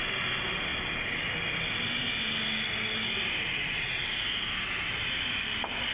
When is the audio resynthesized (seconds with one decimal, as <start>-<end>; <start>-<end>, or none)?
none